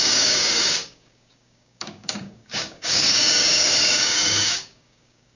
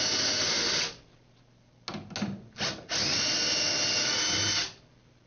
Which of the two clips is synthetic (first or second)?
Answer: first